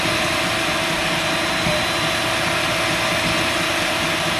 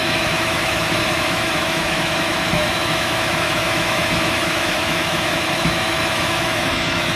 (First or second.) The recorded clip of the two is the first